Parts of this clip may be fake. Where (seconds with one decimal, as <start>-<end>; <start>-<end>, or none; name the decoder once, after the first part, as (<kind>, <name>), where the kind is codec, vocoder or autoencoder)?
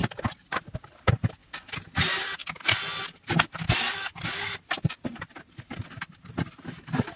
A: none